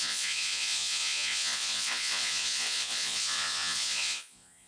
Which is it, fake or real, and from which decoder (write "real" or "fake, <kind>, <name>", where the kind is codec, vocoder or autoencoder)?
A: fake, vocoder, Vocos